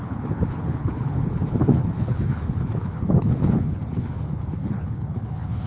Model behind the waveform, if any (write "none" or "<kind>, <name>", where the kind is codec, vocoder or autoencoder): codec, HILCodec